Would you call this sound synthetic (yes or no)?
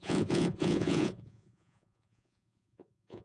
yes